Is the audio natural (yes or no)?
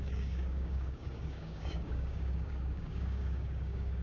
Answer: no